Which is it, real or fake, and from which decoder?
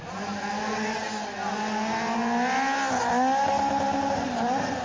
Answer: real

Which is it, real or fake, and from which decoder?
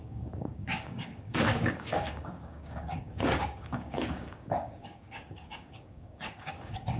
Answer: fake, codec, DAC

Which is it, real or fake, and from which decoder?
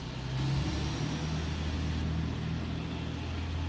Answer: real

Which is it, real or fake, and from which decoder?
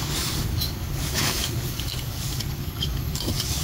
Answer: fake, codec, DAC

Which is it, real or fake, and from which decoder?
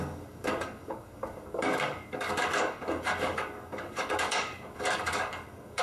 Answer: fake, codec, DAC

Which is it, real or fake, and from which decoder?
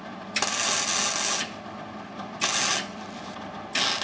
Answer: real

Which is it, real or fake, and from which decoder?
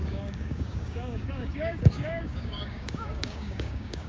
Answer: fake, codec, DAC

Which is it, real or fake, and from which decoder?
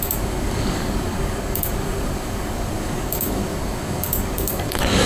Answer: fake, codec, DAC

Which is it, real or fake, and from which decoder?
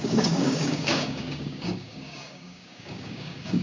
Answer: fake, codec, DAC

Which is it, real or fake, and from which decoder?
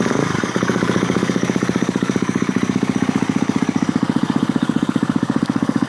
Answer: fake, codec, DAC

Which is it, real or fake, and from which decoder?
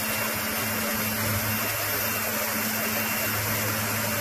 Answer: real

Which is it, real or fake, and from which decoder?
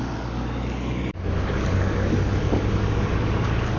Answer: fake, codec, DAC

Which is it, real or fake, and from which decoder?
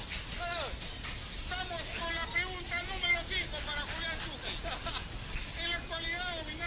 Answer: real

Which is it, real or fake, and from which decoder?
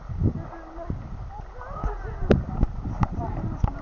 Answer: real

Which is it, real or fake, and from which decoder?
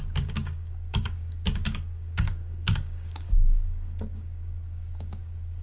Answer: fake, codec, DAC